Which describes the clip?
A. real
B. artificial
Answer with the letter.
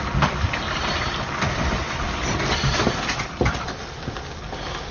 A